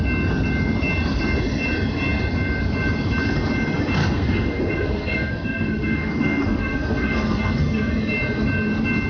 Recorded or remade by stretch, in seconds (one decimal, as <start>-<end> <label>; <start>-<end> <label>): 0.0-4.0 recorded; 4.0-7.9 remade; 7.9-9.1 recorded